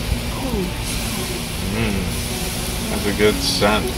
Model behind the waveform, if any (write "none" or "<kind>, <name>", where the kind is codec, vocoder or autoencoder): none